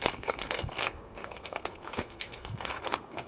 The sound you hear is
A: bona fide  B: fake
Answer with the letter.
B